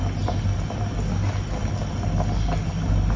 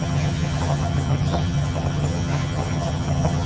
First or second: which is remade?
second